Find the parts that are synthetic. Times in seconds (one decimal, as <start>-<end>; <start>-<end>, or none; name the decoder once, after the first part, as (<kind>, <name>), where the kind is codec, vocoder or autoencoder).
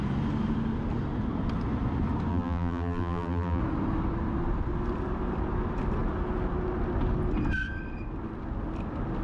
2.3-3.6 (vocoder, BigVGAN v2)